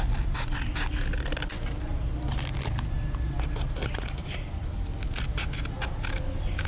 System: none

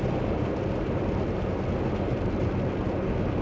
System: none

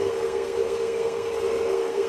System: codec, SNAC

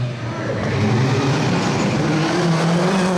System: none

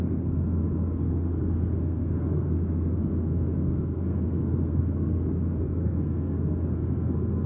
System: codec, SNAC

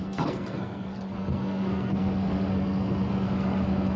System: codec, SNAC